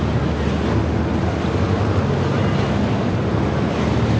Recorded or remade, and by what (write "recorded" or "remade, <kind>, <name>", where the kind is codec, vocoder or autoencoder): recorded